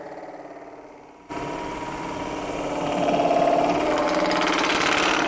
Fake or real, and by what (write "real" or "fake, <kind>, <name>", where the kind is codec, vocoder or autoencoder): real